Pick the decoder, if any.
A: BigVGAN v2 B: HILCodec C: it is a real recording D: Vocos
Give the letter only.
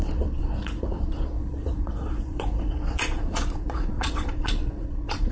D